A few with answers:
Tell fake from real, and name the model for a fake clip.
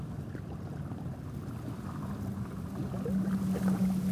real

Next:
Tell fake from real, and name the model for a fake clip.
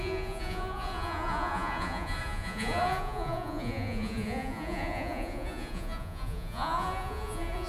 fake, vocoder, Vocos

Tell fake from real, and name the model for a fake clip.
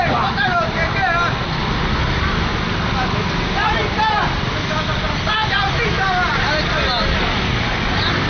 real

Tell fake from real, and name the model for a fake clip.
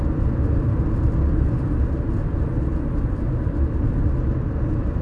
real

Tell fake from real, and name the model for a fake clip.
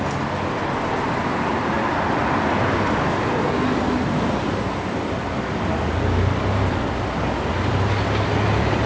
real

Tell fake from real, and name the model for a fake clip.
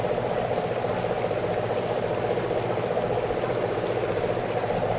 real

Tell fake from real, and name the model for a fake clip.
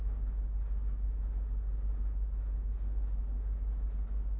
real